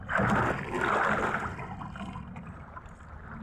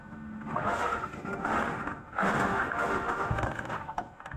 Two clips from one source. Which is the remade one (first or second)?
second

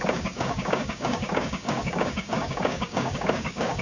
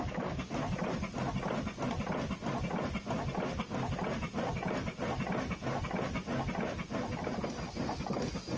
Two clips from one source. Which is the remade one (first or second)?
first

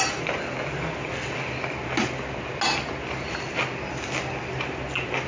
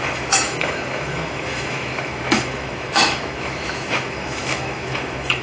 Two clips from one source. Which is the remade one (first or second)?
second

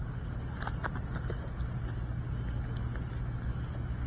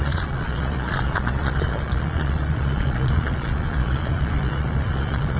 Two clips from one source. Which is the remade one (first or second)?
second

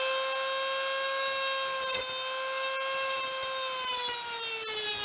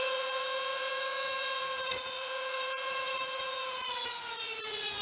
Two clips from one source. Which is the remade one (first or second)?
second